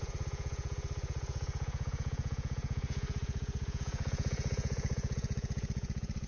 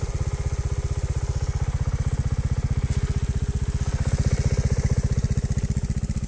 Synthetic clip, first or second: first